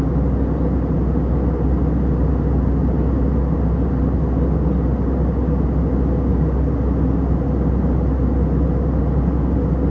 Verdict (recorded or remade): recorded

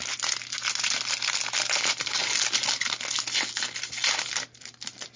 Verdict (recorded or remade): recorded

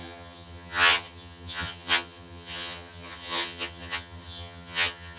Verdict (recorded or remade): remade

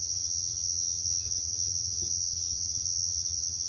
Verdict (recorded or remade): remade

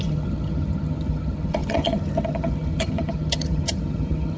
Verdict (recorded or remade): remade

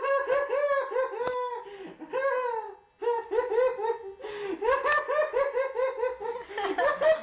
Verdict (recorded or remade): recorded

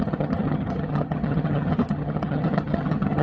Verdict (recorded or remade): remade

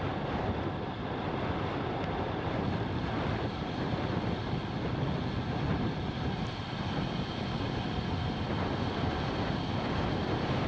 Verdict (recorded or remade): recorded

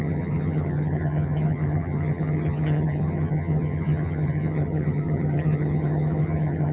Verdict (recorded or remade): remade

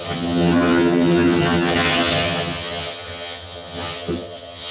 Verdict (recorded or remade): remade